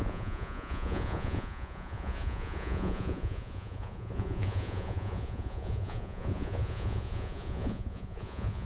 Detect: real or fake fake